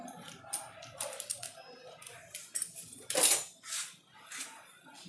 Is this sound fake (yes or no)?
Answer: no